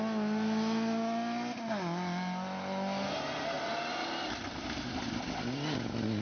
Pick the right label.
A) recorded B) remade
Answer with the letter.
A